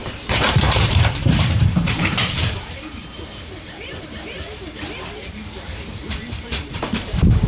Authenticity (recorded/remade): remade